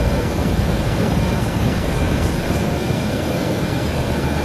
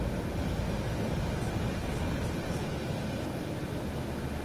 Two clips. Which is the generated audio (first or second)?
first